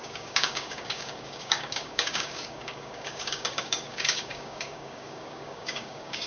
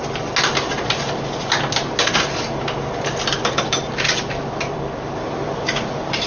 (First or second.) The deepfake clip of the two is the first